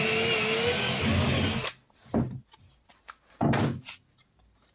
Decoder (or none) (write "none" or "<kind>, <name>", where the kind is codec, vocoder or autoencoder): none